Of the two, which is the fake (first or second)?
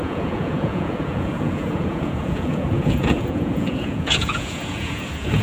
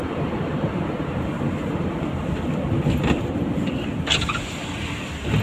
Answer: first